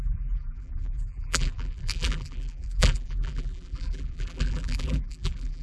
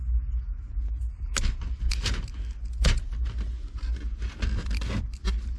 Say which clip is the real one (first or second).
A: second